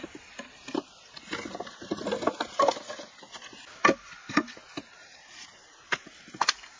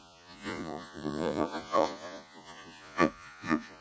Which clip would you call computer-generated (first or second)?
second